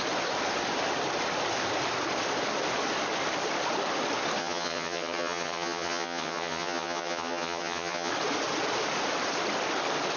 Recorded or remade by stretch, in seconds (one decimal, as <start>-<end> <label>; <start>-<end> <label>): 0.0-4.4 recorded; 4.4-8.1 remade; 8.1-10.2 recorded